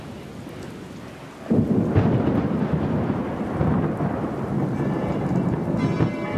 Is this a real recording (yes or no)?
yes